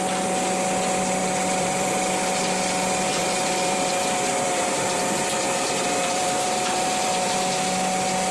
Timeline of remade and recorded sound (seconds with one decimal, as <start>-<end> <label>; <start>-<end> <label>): 0.0-1.2 recorded; 1.2-1.9 remade; 1.9-3.1 recorded; 3.1-7.5 remade; 7.5-8.3 recorded

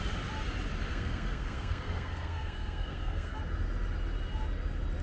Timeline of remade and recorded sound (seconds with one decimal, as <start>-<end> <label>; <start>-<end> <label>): 0.0-0.9 recorded; 0.9-3.4 remade; 3.4-5.0 recorded

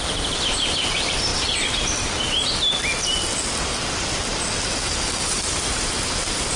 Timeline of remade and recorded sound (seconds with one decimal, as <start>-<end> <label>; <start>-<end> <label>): 0.0-6.6 recorded